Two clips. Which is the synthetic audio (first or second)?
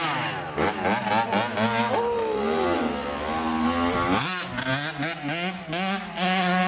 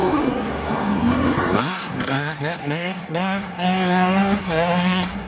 second